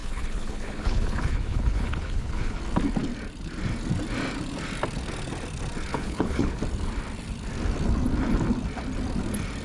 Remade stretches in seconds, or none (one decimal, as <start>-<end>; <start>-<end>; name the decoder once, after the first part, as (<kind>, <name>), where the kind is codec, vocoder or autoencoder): 0.0-2.6 (codec, HILCodec); 5.9-6.6